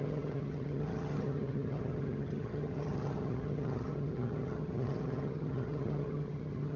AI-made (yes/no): yes